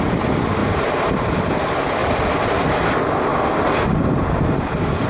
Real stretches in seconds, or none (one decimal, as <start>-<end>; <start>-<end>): 0.0-0.6; 1.2-2.0; 2.9-5.1